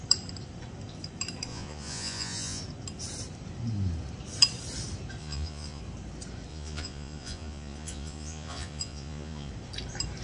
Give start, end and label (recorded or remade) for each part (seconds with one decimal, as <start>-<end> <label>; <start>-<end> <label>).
0.0-1.5 recorded; 1.5-2.6 remade; 2.6-5.2 recorded; 5.2-5.8 remade; 5.8-6.5 recorded; 6.5-9.5 remade; 9.5-10.2 recorded